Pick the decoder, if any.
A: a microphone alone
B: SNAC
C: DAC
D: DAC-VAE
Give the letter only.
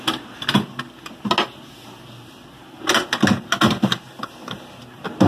A